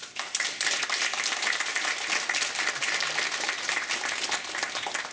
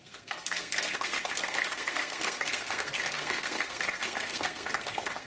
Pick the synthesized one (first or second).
second